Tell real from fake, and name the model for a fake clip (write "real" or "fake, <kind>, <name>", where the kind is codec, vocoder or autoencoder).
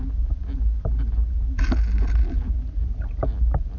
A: real